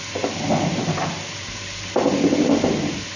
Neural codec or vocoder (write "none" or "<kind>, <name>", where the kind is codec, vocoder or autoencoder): none